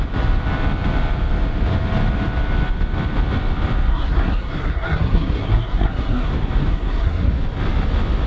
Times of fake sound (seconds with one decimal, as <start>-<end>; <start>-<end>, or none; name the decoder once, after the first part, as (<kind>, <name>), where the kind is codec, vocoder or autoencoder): 3.9-6.3 (codec, SNAC); 6.7-7.3